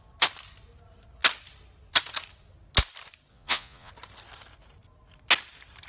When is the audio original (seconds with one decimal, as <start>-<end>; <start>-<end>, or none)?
0.0-3.3; 3.9-5.9